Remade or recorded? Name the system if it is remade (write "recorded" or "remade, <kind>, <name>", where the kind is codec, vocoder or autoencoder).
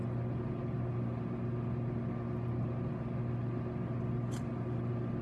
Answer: recorded